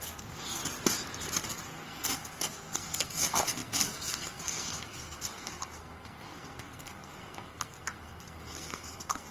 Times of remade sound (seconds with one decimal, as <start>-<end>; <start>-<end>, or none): 0.0-0.6; 1.5-9.3